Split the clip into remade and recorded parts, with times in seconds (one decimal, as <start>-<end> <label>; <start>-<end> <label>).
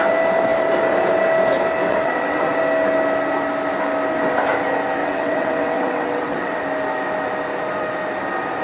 0.0-1.9 recorded; 1.9-2.6 remade; 2.6-5.0 recorded; 5.0-6.6 remade; 6.6-8.6 recorded